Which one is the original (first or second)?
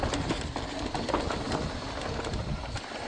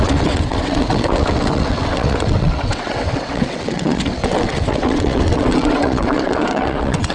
first